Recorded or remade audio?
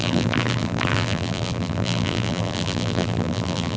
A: remade